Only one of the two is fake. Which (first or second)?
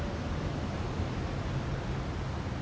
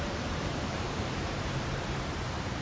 second